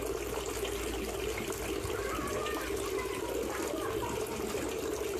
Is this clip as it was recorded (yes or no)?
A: yes